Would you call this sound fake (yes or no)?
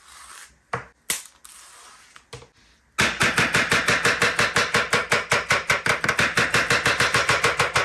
no